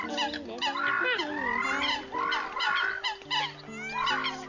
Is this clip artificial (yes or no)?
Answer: no